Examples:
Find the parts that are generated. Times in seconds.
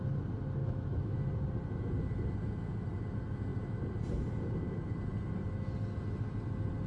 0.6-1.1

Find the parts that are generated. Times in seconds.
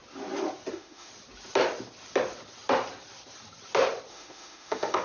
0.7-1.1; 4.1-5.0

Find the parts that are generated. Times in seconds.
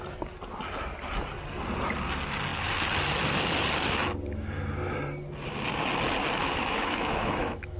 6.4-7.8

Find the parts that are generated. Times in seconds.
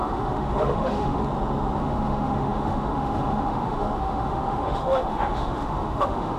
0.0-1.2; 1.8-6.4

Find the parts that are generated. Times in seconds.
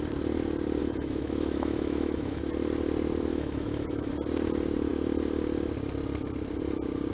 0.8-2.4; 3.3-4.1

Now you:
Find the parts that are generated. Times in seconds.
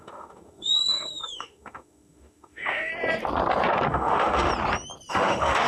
0.0-2.9; 3.9-4.5; 5.1-5.7